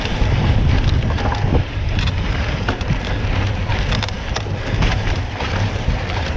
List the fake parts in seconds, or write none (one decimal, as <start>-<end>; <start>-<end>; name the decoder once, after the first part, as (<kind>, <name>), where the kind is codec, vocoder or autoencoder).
1.5-3.7 (vocoder, BigVGAN v2); 4.9-6.4